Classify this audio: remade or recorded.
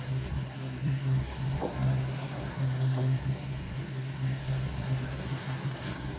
remade